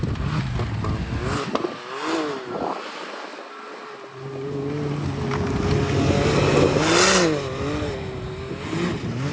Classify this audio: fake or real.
real